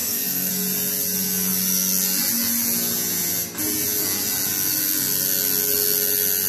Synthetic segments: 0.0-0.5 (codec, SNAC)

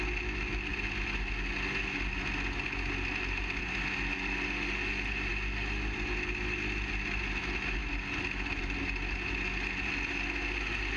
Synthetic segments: none

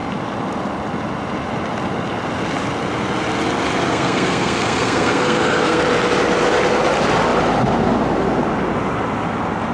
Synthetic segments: 3.9-5.8 (codec, SNAC)

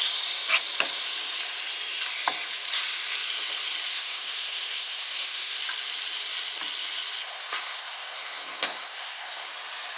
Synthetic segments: 3.9-5.6 (codec, SNAC); 7.2-9.5